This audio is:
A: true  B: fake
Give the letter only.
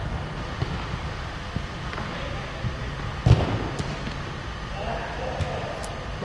A